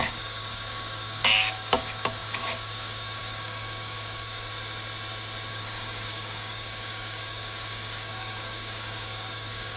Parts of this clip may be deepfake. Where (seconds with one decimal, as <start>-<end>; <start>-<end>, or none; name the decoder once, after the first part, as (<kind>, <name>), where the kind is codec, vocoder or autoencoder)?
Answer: 0.0-4.5 (codec, DAC); 5.5-9.8